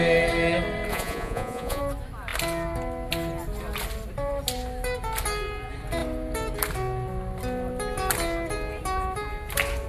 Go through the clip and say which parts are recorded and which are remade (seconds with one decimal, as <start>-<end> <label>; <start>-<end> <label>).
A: 0.0-0.9 recorded; 0.9-1.8 remade; 1.8-9.9 recorded